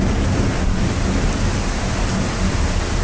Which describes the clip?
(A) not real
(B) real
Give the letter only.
B